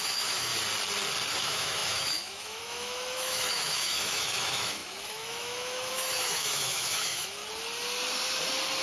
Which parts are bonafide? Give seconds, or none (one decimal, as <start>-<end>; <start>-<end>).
0.5-1.3; 7.4-8.8